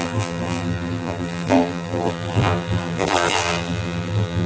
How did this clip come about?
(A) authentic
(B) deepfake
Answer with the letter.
B